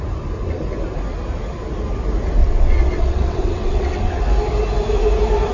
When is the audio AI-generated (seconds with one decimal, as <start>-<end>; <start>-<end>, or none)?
2.4-4.2